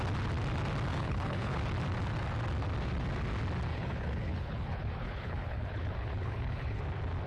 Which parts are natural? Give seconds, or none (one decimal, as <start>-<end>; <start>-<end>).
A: 0.0-0.9; 1.6-3.7; 6.8-7.3